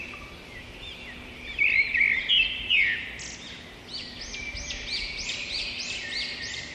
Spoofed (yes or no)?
no